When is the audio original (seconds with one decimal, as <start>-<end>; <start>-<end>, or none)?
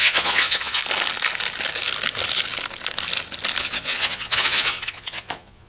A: 0.8-3.6